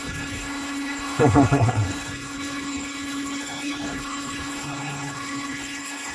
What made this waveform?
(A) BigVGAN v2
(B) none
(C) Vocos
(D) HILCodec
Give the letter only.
D